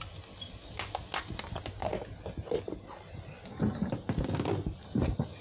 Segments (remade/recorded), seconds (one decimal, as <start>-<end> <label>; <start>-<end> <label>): 0.0-5.4 recorded